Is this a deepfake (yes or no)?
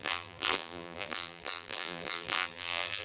yes